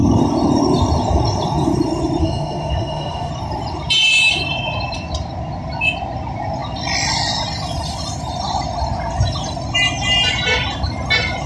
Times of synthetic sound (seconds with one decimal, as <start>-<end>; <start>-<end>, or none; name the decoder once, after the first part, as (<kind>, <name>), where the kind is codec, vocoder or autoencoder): 2.2-3.3 (autoencoder, DAC-VAE)